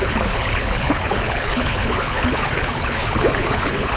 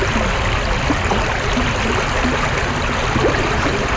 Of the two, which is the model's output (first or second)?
first